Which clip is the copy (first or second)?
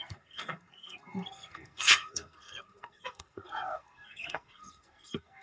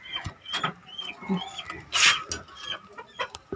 first